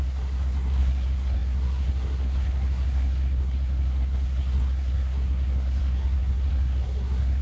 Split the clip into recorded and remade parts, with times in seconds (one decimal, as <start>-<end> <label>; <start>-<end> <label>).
0.0-7.4 remade